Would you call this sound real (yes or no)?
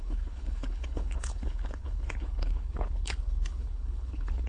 no